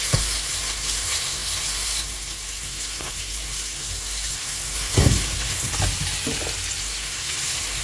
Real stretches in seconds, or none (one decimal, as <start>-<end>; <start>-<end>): 5.7-6.8

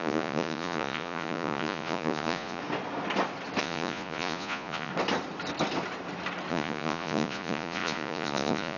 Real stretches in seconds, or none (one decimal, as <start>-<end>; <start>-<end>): 2.6-3.6; 4.9-6.5

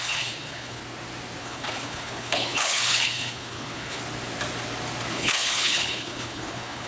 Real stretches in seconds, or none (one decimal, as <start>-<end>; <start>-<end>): 0.8-1.4; 4.0-5.1